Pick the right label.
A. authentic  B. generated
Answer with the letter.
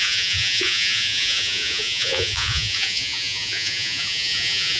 B